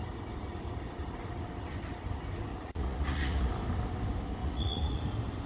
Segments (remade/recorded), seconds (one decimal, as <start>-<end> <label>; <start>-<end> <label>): 0.0-2.5 recorded; 2.5-3.5 remade; 3.5-4.4 recorded; 4.4-5.0 remade; 5.0-5.5 recorded